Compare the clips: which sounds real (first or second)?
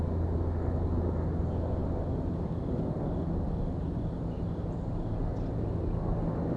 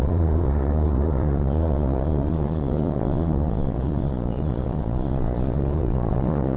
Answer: first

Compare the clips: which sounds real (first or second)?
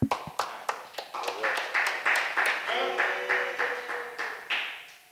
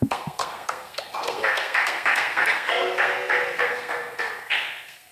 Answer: first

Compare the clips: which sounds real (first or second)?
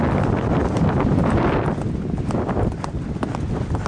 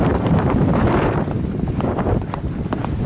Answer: first